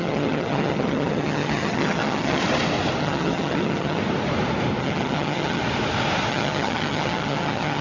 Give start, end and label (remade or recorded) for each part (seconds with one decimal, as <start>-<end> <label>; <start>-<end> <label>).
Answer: 0.0-2.4 remade; 2.4-3.0 recorded; 3.0-4.0 remade; 4.0-4.8 recorded; 4.8-5.6 remade; 5.6-6.3 recorded; 6.3-7.8 remade